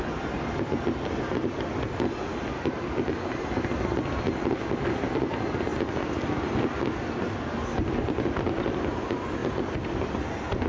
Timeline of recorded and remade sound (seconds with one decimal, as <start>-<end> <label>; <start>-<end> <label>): 0.0-10.7 recorded